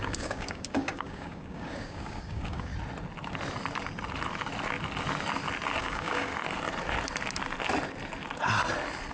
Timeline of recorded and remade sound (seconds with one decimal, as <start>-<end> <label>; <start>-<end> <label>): 0.0-2.7 remade; 2.7-5.8 recorded; 5.8-6.3 remade; 6.3-9.1 recorded